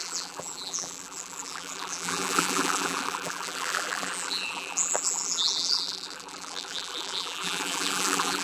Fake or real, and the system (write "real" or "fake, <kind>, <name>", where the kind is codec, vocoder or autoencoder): fake, vocoder, BigVGAN v2